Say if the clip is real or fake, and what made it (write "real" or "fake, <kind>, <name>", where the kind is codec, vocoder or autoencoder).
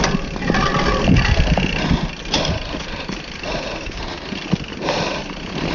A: real